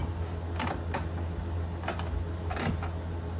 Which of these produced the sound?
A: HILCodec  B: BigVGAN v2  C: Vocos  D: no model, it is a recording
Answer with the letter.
D